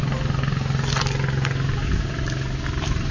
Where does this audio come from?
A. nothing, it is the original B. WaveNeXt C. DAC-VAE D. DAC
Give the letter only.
A